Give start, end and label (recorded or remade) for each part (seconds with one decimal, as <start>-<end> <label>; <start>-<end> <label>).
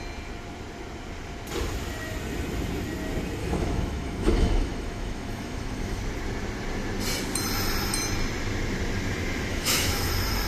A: 0.0-3.4 recorded; 3.4-6.0 remade; 6.0-9.5 recorded; 9.5-10.1 remade; 10.1-10.5 recorded